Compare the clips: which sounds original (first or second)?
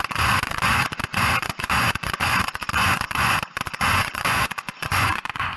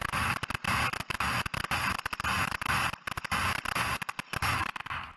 second